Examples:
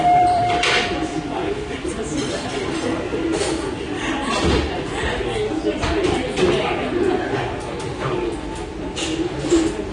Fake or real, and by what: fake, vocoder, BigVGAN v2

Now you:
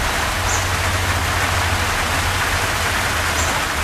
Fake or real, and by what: real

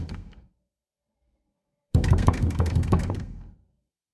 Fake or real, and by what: fake, codec, SNAC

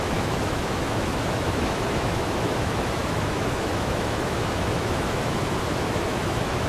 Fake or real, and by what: fake, autoencoder, DAC-VAE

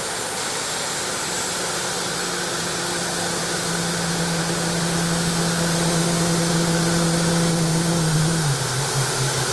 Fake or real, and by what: real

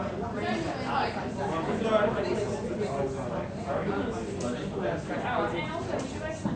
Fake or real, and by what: real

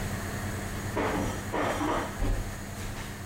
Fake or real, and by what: real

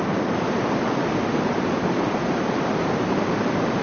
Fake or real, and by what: fake, vocoder, BigVGAN v2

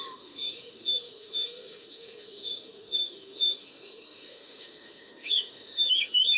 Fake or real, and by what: fake, autoencoder, DAC-VAE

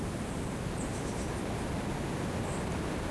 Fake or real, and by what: real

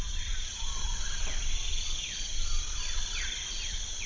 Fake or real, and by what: fake, vocoder, Vocos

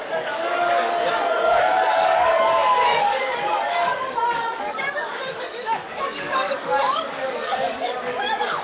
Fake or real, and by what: fake, codec, DAC